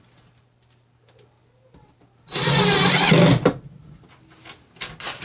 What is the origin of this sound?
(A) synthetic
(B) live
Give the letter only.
B